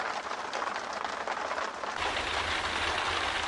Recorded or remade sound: recorded